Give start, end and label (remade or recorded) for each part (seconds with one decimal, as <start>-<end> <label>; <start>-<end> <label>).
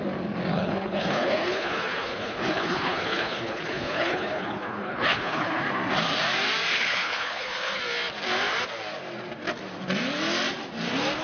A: 0.0-0.5 recorded; 0.5-5.6 remade; 5.6-6.7 recorded; 6.7-7.8 remade; 7.8-11.2 recorded